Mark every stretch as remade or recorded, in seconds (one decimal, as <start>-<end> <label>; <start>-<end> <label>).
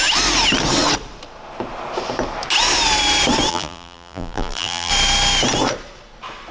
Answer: 0.0-3.5 recorded; 3.5-4.9 remade; 4.9-6.5 recorded